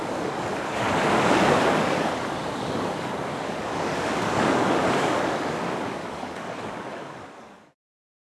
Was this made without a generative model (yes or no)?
no